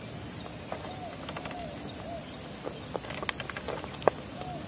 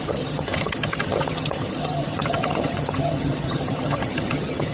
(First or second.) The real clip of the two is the first